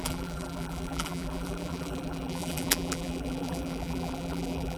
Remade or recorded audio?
remade